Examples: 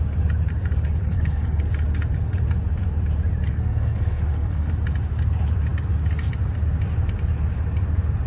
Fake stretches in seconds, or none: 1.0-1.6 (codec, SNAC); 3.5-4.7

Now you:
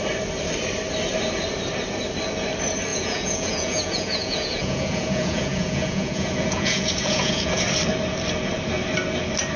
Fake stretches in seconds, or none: 2.9-7.6 (vocoder, Vocos)

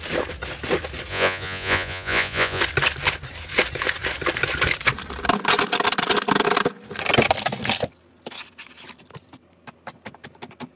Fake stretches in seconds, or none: 1.1-2.6 (vocoder, Vocos)

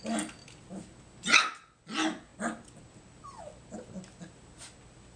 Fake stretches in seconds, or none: none

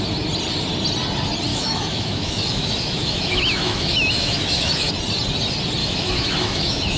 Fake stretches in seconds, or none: 1.5-4.9 (autoencoder, DAC-VAE); 5.8-7.0

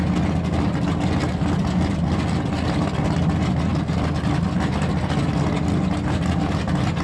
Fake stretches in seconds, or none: 3.7-4.9 (vocoder, BigVGAN v2)